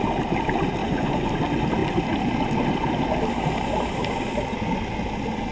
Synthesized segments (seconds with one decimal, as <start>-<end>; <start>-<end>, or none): 0.8-1.3